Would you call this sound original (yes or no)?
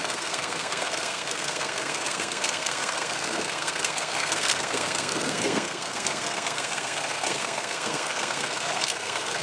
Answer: no